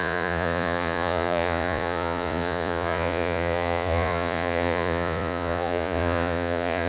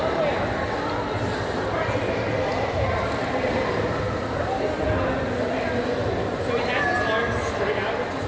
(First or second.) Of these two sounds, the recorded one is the second